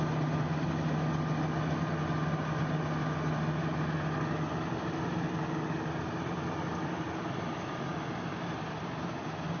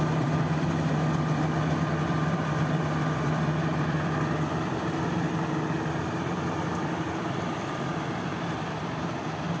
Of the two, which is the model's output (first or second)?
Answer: second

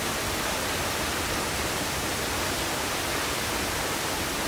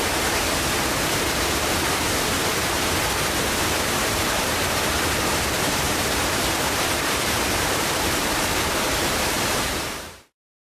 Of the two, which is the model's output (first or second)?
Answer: second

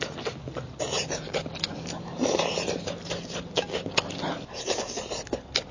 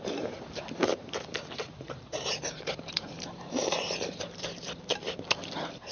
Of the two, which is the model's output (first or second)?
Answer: second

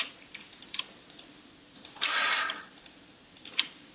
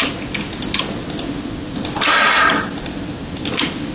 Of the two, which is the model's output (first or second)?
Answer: first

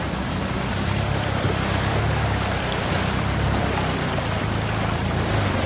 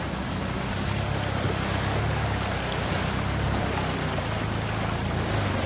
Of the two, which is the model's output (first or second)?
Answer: first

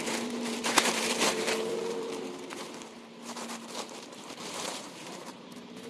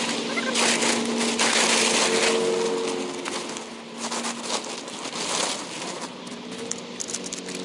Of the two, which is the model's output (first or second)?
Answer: first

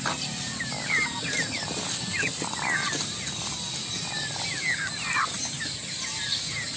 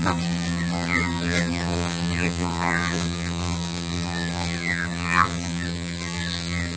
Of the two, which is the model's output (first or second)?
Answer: second